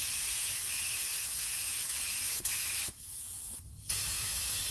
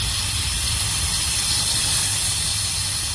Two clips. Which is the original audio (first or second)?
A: second